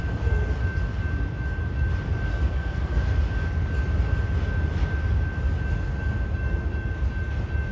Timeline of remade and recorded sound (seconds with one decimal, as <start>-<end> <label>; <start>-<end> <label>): 0.0-2.3 recorded; 2.3-3.1 remade; 3.1-7.7 recorded